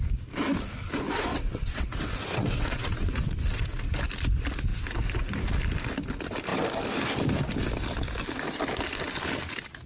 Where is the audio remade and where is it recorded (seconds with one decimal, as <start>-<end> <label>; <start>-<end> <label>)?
0.0-1.3 recorded; 1.3-3.8 remade; 3.8-9.9 recorded